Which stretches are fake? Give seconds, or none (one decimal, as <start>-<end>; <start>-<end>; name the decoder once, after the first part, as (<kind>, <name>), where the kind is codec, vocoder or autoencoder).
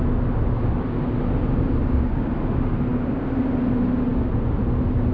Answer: 1.8-2.3 (codec, DAC)